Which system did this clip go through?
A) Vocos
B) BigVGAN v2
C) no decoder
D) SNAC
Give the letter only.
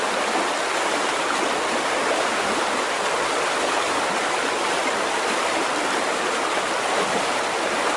C